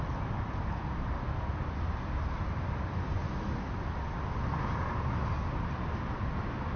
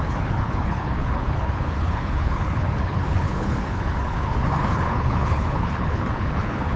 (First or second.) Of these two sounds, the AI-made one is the second